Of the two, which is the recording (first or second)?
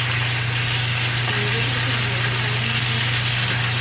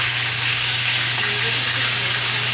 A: first